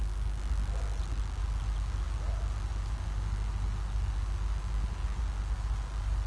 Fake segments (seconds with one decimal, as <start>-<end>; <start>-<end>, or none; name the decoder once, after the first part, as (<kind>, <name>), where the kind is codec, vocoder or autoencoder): none